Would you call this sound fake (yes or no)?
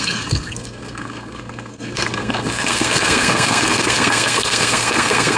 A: yes